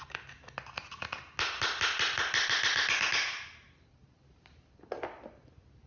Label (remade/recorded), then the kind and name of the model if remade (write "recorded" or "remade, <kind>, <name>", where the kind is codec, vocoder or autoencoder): recorded